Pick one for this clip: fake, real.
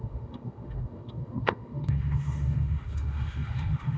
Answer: fake